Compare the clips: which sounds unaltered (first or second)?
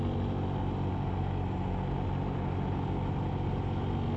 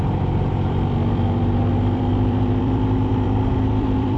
first